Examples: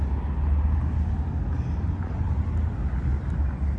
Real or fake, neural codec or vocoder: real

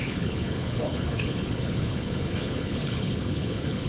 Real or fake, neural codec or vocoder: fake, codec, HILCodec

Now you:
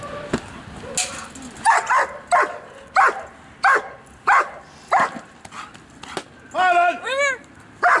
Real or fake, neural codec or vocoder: real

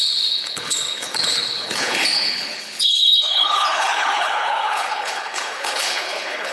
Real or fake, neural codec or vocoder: fake, codec, HILCodec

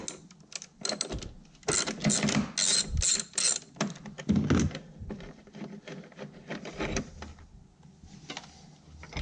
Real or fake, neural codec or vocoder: real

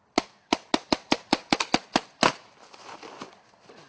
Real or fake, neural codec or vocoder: real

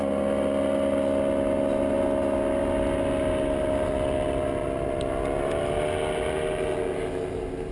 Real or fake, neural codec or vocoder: real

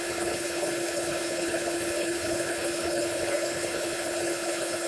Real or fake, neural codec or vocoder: fake, codec, HILCodec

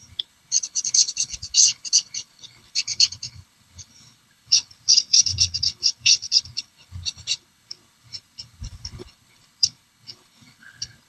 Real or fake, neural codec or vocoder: fake, codec, HILCodec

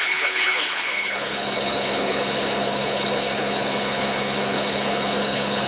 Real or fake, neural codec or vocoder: fake, codec, HILCodec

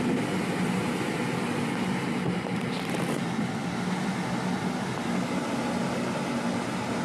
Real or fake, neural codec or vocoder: real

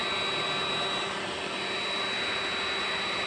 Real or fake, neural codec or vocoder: real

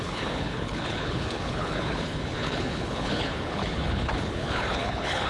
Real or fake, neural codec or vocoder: fake, codec, HILCodec